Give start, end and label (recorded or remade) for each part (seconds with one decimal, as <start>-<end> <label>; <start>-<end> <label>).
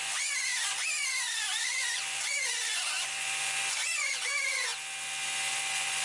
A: 0.0-4.7 remade; 4.7-5.5 recorded; 5.5-6.0 remade